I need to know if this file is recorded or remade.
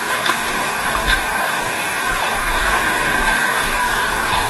remade